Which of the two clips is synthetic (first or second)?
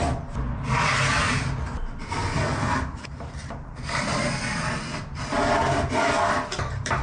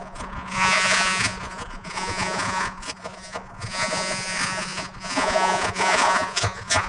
second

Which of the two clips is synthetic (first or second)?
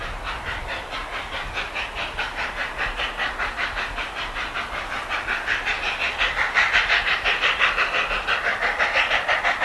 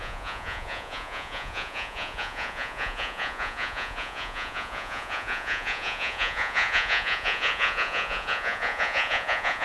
second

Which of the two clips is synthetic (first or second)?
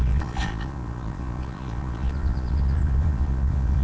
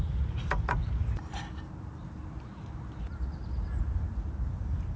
first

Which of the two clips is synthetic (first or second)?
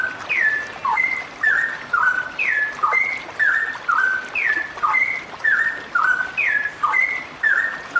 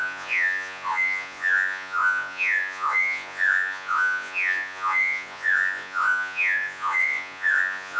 second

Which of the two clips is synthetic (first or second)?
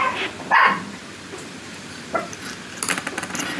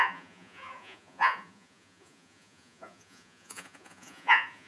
second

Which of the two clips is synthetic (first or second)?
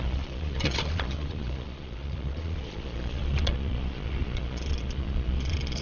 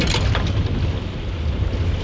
first